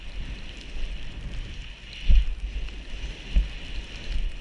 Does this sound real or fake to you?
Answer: real